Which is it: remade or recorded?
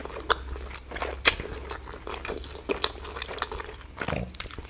recorded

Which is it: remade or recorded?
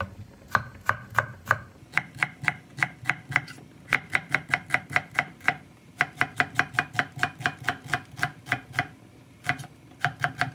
recorded